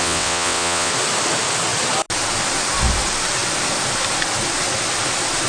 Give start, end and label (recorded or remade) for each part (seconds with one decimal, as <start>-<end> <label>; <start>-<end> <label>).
0.0-0.9 remade; 0.9-5.5 recorded